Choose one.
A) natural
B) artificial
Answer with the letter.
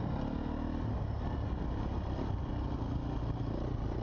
A